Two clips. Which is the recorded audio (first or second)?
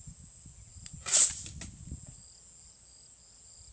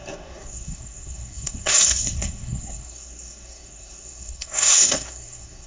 first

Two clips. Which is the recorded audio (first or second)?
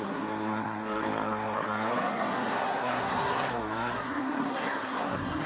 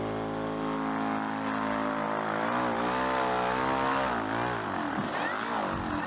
second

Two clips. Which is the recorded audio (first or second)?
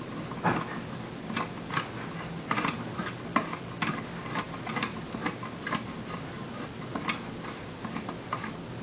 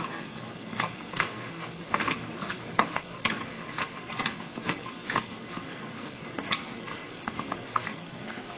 first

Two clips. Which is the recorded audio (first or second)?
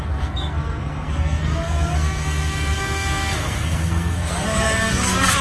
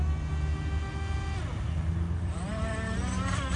second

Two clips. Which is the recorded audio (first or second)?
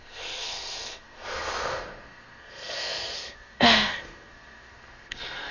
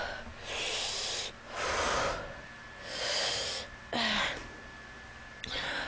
second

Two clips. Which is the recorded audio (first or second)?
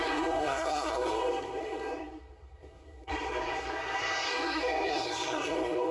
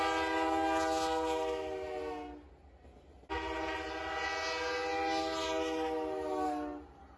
second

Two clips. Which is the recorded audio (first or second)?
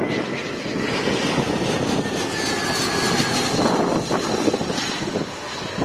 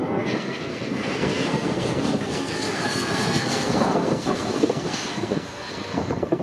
first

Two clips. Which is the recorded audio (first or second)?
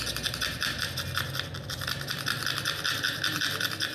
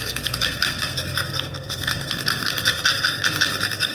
first